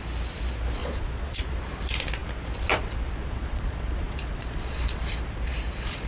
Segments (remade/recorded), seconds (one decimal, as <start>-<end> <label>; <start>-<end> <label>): 0.0-0.8 recorded; 0.8-1.6 remade; 1.6-3.2 recorded; 3.2-5.0 remade; 5.0-6.1 recorded